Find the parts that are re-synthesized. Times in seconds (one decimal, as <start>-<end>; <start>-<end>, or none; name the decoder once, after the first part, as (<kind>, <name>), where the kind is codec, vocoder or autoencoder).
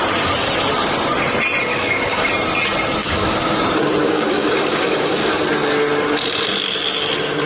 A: 1.6-2.3 (codec, DAC); 3.0-3.6; 4.0-5.4